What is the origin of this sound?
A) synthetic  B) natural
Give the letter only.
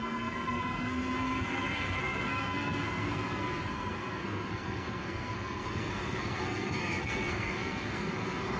A